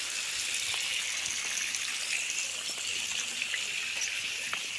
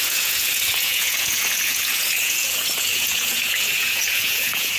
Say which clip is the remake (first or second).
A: second